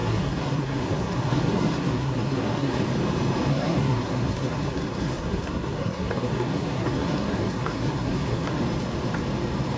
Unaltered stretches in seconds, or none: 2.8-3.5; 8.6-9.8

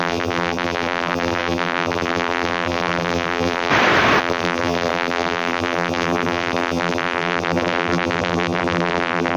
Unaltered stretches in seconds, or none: 3.7-4.2